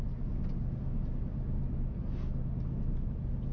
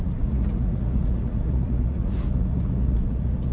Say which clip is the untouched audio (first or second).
first